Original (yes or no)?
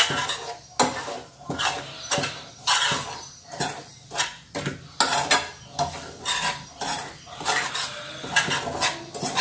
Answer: yes